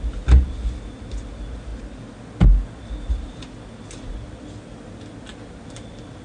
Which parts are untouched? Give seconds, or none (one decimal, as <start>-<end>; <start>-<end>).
0.0-6.2